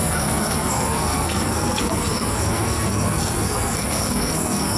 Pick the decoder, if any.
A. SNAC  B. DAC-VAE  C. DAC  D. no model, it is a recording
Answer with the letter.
A